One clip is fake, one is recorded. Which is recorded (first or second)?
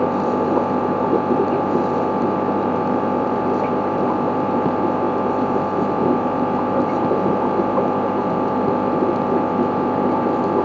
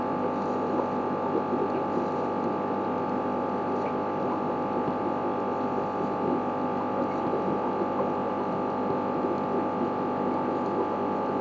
second